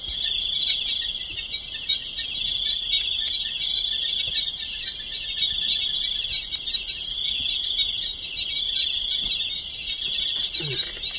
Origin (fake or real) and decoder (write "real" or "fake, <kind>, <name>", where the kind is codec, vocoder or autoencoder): real